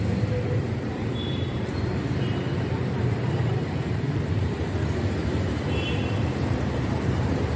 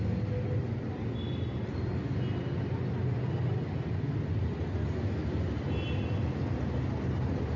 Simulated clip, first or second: first